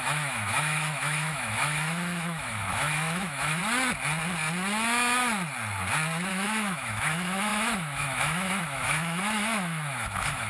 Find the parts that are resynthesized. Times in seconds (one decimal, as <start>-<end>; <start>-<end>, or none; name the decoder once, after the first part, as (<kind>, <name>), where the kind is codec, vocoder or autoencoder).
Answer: 0.0-3.6 (autoencoder, DAC-VAE); 6.3-10.5